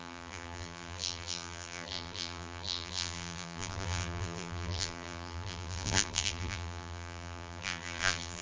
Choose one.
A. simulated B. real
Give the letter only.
A